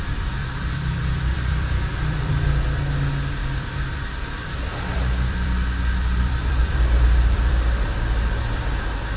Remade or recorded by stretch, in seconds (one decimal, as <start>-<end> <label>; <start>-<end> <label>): 0.0-0.4 recorded; 0.4-2.3 remade; 2.3-3.4 recorded; 3.4-8.4 remade; 8.4-9.2 recorded